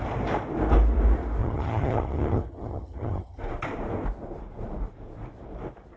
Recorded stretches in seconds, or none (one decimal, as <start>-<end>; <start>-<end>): 0.0-1.4; 3.4-6.0